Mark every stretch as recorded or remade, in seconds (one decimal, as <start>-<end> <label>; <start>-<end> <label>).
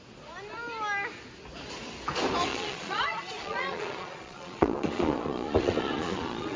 0.0-2.5 recorded; 2.5-6.6 remade